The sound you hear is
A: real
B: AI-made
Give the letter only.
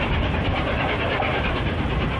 B